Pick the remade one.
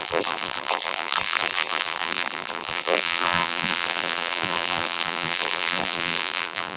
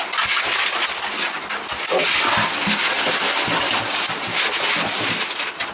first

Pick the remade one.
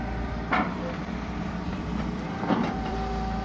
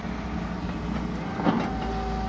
first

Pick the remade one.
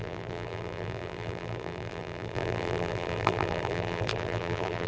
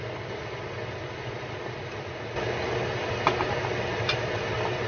first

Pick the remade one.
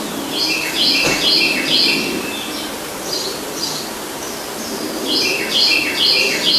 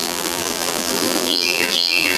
second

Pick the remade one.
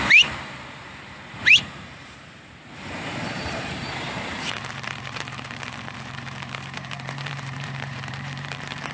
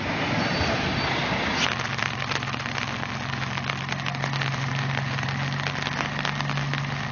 first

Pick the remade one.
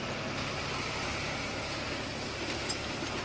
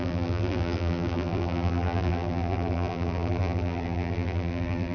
second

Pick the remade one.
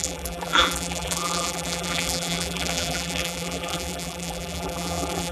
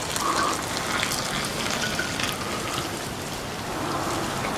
first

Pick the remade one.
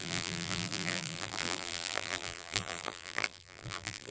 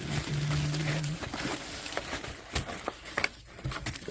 first